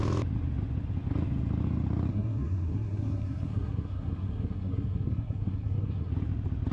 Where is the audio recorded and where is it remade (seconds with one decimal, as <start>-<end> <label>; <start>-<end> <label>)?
0.0-2.1 recorded; 2.1-6.1 remade; 6.1-6.7 recorded

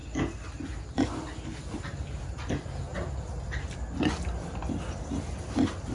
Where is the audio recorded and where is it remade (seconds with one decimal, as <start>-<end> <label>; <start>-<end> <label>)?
0.0-5.9 recorded

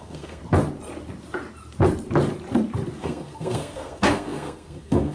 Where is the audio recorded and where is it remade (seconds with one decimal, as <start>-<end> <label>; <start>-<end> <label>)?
0.0-0.4 remade; 0.4-3.0 recorded; 3.0-5.1 remade